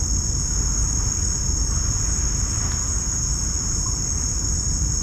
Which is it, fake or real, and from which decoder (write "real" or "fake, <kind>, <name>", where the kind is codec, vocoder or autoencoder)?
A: real